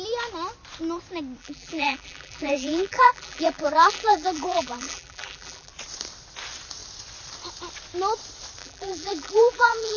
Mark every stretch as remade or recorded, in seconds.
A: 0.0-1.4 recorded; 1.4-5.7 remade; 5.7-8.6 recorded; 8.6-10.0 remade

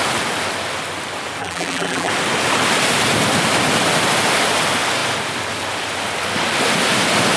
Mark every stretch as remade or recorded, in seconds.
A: 0.0-1.4 recorded; 1.4-2.1 remade; 2.1-7.4 recorded

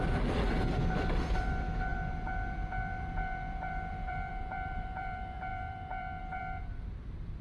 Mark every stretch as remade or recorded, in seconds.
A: 0.0-7.4 remade

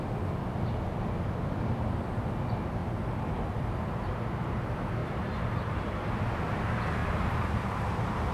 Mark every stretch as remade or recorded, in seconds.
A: 0.0-5.0 recorded; 5.0-6.0 remade; 6.0-7.0 recorded; 7.0-8.3 remade

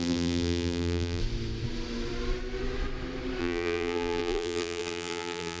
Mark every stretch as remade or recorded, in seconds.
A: 0.0-1.2 remade; 1.2-3.4 recorded; 3.4-5.6 remade